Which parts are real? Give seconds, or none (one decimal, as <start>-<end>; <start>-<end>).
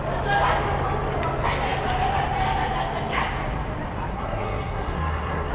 0.0-4.1